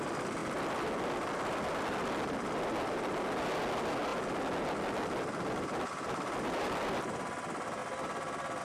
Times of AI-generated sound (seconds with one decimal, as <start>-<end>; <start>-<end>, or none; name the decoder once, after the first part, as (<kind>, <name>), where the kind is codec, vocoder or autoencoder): none